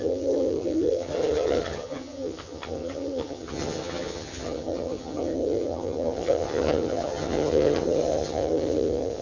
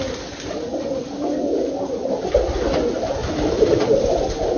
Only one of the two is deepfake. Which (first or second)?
first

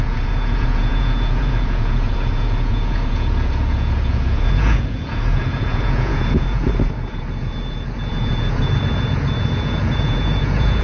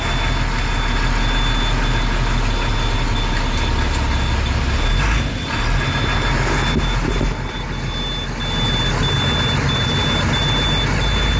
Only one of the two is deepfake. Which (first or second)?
first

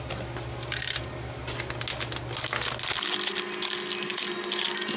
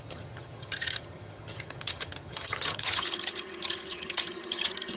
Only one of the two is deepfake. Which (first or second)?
second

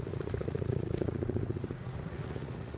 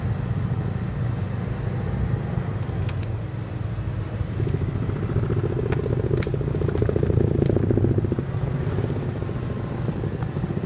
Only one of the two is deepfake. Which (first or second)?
first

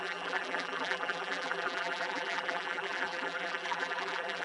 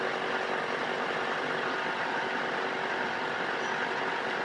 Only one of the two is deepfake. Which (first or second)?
first